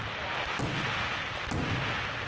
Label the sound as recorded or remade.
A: recorded